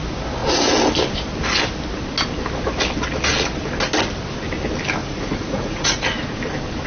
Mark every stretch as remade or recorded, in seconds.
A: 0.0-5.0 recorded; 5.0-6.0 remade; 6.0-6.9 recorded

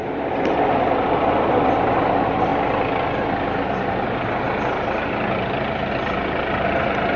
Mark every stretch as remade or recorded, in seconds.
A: 0.0-7.2 recorded

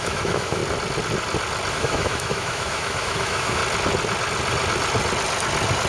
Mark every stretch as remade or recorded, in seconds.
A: 0.0-0.6 remade; 0.6-1.7 recorded; 1.7-3.6 remade; 3.6-5.9 recorded

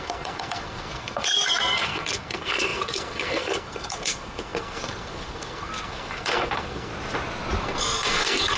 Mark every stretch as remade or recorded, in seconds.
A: 0.0-6.9 remade; 6.9-7.6 recorded; 7.6-8.6 remade

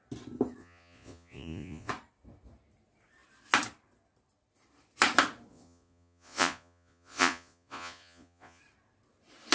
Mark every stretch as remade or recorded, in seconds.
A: 0.0-0.6 recorded; 0.6-1.9 remade; 1.9-5.5 recorded; 5.5-8.6 remade; 8.6-9.5 recorded

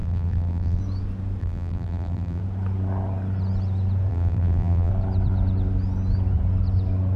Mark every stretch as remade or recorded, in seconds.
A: 0.0-0.8 remade; 0.8-1.4 recorded; 1.4-2.4 remade; 2.4-4.1 recorded; 4.1-4.9 remade; 4.9-7.2 recorded

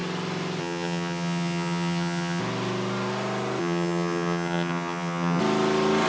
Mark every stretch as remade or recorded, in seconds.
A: 0.0-0.6 recorded; 0.6-2.4 remade; 2.4-3.6 recorded; 3.6-5.4 remade; 5.4-6.1 recorded

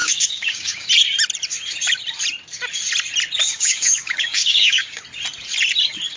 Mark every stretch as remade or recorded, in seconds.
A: 0.0-0.9 remade; 0.9-3.5 recorded; 3.5-5.0 remade; 5.0-6.2 recorded